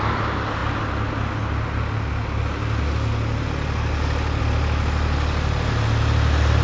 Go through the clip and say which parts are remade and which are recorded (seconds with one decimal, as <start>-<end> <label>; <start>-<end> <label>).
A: 0.0-6.6 recorded